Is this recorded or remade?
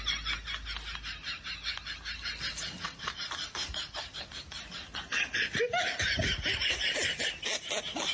recorded